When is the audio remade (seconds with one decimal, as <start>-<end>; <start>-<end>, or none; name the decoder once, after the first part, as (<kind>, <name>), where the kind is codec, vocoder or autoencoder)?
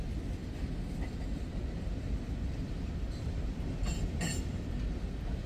0.4-3.7 (vocoder, BigVGAN v2)